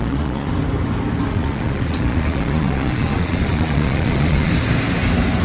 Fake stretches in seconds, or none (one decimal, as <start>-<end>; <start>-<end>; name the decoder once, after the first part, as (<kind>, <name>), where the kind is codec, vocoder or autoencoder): 0.0-0.5 (vocoder, Vocos); 1.3-4.5